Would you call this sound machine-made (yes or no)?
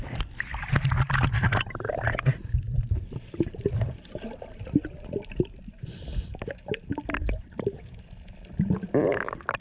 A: no